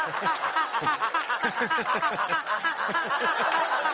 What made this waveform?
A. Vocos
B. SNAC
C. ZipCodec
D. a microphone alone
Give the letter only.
D